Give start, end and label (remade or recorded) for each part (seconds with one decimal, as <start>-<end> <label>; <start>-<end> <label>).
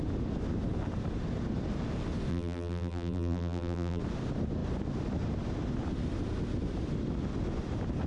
0.0-2.3 recorded; 2.3-4.0 remade; 4.0-8.1 recorded